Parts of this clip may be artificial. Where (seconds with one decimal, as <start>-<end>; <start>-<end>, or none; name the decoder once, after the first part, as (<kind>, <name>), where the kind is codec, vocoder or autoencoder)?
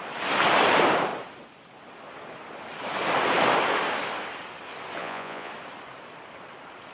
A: 5.0-5.5 (vocoder, Vocos)